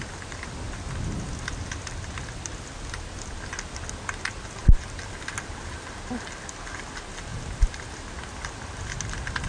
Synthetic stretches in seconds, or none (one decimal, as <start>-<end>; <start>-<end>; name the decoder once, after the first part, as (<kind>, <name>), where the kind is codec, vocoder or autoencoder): none